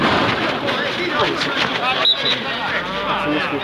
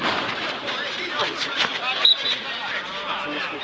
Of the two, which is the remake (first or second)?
second